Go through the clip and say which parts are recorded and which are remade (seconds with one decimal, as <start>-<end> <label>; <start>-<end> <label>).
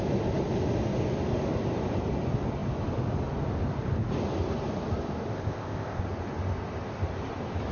0.0-5.3 recorded; 5.3-6.0 remade; 6.0-7.7 recorded